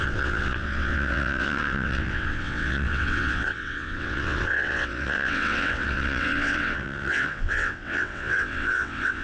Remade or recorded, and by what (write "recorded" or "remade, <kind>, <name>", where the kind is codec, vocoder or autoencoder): remade, vocoder, WaveNeXt